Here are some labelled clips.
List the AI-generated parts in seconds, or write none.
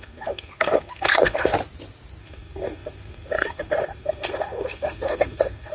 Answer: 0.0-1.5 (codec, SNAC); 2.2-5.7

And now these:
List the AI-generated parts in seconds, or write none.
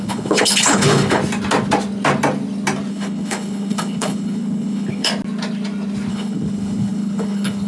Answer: 0.0-1.2 (codec, HILCodec); 2.9-5.1; 6.1-7.7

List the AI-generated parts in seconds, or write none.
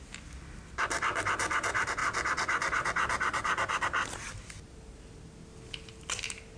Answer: none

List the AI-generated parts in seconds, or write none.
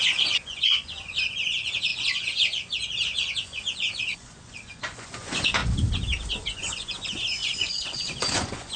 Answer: 0.0-5.6 (vocoder, Vocos); 6.3-8.8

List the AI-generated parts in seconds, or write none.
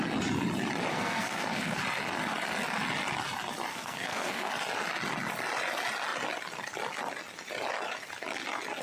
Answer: 0.9-1.8 (codec, SNAC); 3.7-4.5